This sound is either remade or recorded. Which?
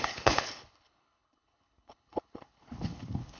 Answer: remade